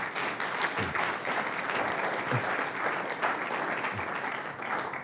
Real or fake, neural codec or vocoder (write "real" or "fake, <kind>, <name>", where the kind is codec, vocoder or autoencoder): real